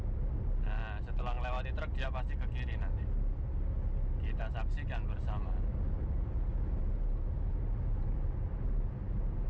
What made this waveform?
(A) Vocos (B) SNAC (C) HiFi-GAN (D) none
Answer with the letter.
D